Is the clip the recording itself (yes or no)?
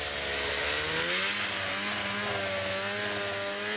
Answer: yes